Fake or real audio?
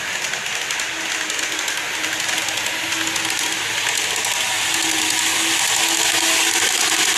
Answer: real